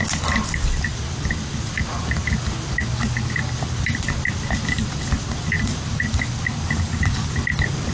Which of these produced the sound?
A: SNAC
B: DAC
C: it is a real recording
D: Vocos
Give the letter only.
C